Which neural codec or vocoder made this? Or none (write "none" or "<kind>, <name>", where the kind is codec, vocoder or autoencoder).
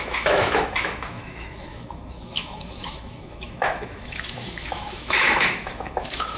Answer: autoencoder, DAC-VAE